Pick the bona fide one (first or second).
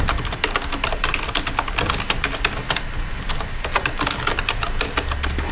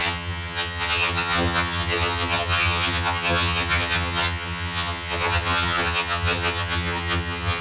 first